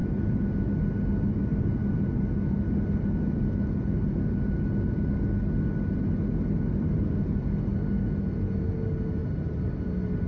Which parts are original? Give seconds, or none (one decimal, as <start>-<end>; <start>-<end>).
0.0-9.2; 9.7-10.3